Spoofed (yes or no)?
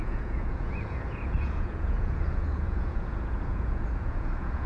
yes